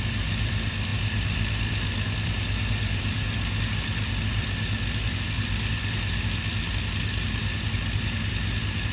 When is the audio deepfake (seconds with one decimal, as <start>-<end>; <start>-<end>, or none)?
none